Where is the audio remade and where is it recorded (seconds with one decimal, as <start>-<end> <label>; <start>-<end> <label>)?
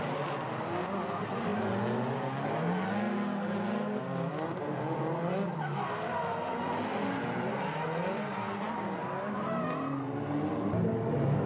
0.0-11.5 recorded